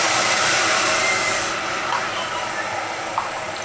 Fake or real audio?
real